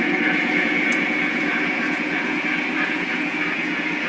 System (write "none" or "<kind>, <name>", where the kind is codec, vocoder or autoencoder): vocoder, Vocos